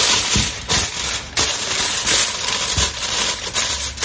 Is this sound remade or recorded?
recorded